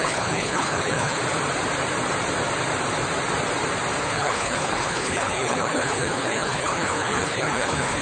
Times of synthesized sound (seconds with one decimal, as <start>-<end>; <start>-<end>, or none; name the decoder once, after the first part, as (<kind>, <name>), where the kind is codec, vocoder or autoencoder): 0.0-1.2 (codec, HILCodec); 4.0-8.0